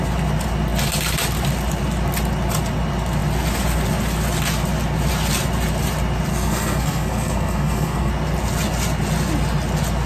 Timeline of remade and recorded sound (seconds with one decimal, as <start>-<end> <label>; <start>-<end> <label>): 0.0-6.3 recorded; 6.3-8.1 remade; 8.1-10.1 recorded